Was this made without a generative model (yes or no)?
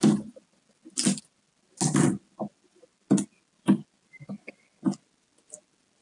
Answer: yes